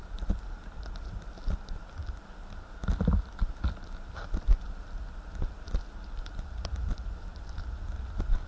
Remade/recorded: recorded